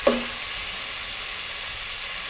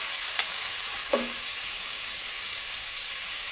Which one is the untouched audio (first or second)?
first